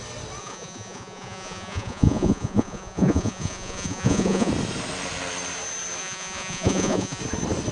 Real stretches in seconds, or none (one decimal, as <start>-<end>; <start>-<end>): 0.0-0.4; 4.5-6.0; 7.2-7.7